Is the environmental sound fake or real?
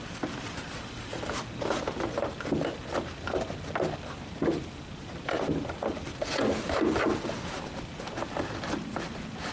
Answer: real